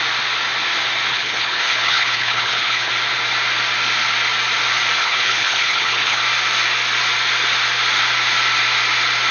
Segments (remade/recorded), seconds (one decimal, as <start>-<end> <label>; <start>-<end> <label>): 0.0-1.1 recorded; 1.1-2.9 remade; 2.9-5.0 recorded; 5.0-6.2 remade; 6.2-9.3 recorded